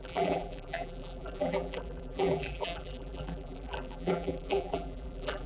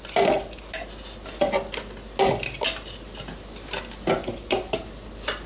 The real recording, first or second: second